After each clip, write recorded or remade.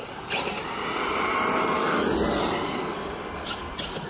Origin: recorded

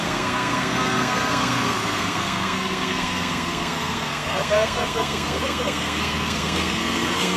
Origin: remade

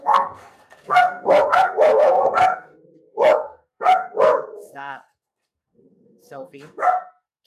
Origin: remade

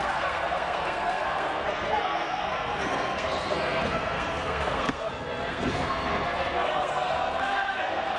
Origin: remade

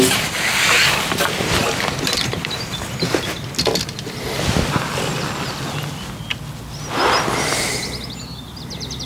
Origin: recorded